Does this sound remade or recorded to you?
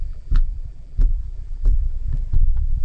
remade